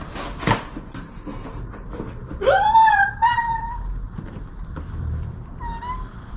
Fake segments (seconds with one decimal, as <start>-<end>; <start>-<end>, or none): 2.2-5.8